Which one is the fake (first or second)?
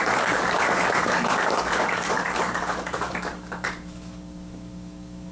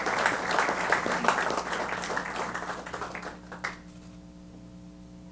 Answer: first